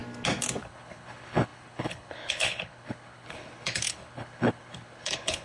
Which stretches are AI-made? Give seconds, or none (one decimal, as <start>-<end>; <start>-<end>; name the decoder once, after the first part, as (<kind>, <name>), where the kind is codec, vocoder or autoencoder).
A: 0.6-5.4 (codec, HILCodec)